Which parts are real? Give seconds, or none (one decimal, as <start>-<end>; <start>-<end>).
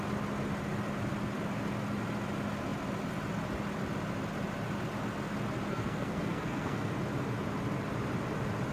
0.0-5.7; 6.9-8.7